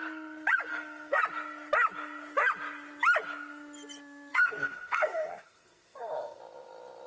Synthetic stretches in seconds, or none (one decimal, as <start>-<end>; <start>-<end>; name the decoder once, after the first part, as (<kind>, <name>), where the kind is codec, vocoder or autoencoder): 0.7-1.2 (codec, SNAC); 4.3-6.4